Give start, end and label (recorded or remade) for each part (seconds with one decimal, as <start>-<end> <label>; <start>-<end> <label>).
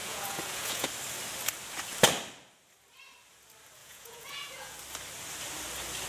0.0-0.9 remade; 0.9-3.8 recorded; 3.8-4.8 remade; 4.8-6.1 recorded